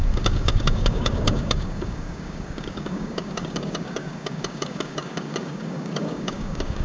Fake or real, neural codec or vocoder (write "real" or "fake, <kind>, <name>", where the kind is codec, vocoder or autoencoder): fake, codec, DAC